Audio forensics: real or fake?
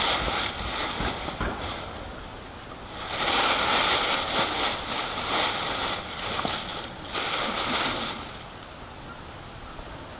real